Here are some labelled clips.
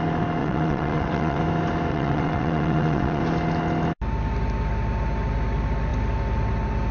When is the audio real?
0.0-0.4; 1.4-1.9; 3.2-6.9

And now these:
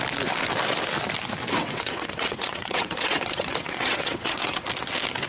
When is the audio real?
0.0-1.6; 4.7-5.3